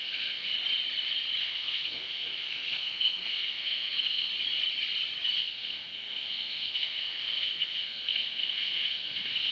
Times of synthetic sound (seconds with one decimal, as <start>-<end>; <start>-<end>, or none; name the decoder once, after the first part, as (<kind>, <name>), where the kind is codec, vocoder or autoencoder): 0.0-0.5 (codec, SNAC); 1.4-4.3; 5.4-9.5